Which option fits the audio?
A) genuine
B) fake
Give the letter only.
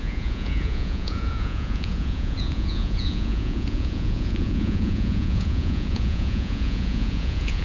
B